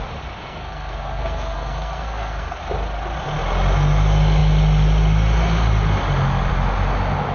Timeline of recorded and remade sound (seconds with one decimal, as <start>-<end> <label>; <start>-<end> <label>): 0.0-0.4 recorded; 0.4-2.6 remade; 2.6-7.3 recorded